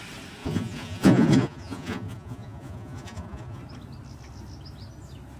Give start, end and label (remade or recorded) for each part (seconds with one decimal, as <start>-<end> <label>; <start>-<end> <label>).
0.0-0.4 recorded; 0.4-3.6 remade; 3.6-5.4 recorded